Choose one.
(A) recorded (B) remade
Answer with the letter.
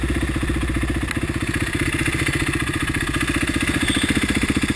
A